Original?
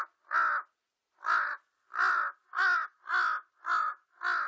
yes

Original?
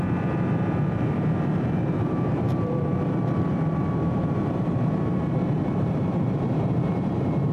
no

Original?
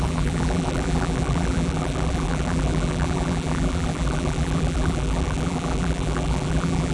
no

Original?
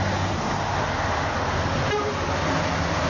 yes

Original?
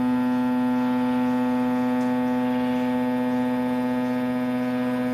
yes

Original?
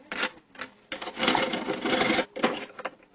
yes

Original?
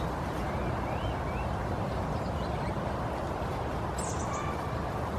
yes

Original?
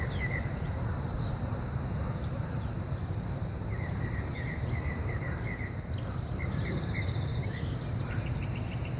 no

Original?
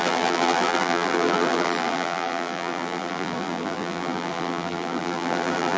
no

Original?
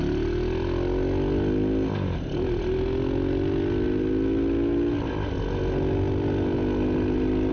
yes